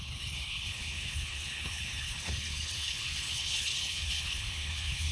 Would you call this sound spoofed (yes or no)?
yes